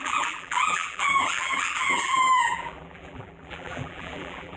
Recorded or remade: remade